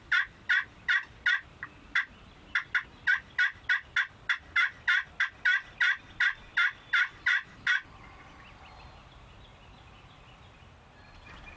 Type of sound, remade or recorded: recorded